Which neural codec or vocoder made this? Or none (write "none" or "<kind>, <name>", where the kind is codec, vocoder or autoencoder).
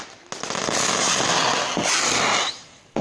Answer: none